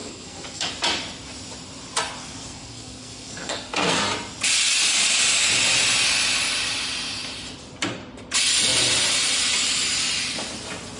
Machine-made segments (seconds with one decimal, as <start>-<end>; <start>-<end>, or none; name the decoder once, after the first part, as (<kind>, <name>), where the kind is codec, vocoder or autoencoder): 0.0-0.7 (codec, SNAC); 2.2-4.0